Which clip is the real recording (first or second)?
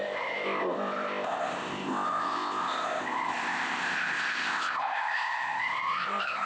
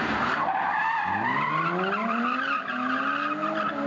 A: second